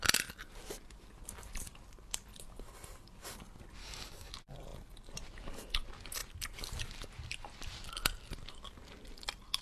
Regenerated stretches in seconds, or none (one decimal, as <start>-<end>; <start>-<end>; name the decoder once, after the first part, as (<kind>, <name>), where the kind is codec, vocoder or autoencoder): 3.8-4.3 (codec, DAC)